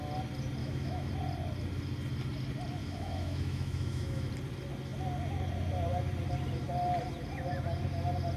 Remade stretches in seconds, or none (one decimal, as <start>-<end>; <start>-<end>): 0.6-1.1; 2.8-4.3